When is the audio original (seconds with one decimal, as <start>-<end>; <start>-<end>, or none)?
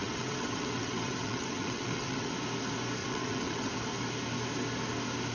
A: 2.3-3.0; 3.7-5.3